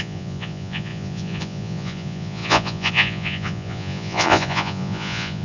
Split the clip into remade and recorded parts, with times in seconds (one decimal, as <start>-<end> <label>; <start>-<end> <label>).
0.0-5.4 remade